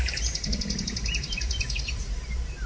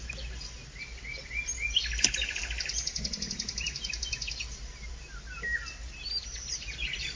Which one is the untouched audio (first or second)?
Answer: second